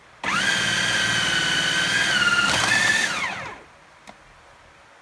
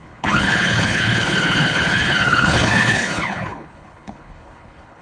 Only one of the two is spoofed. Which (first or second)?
second